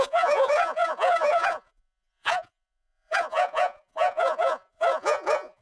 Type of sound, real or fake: fake